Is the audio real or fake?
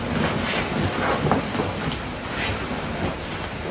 real